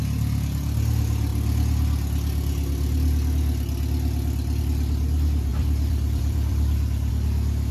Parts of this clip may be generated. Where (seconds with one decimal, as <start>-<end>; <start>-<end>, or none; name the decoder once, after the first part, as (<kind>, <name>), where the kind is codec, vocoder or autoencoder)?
5.5-7.1 (vocoder, BigVGAN v2)